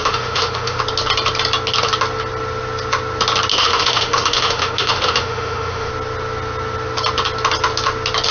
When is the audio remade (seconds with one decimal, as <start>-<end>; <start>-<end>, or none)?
0.0-0.8; 3.5-5.9